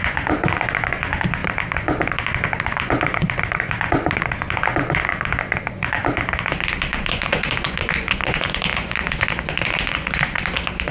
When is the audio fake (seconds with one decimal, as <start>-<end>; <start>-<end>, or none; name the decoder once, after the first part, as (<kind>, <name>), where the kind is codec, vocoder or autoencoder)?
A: 0.0-6.0 (vocoder, Vocos); 6.9-10.9